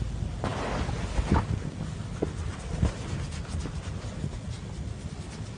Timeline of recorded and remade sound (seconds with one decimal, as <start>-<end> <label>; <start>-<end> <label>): 0.0-5.6 recorded